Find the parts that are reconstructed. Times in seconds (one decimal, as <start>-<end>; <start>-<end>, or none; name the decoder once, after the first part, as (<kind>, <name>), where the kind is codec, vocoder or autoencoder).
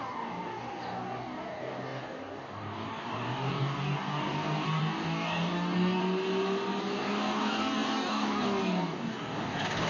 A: 0.0-6.0 (codec, DAC); 6.8-9.9